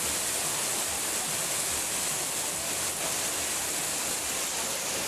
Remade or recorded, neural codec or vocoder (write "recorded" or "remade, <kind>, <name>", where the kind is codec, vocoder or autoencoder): recorded